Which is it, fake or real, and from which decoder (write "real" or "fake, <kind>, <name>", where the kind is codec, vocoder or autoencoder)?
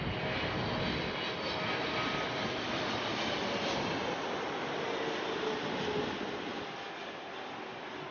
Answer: real